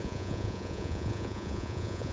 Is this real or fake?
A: fake